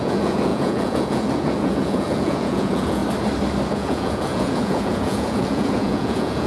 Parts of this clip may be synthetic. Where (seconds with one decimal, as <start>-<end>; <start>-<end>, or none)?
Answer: 0.0-3.0; 3.7-6.5